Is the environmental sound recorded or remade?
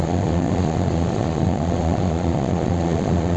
remade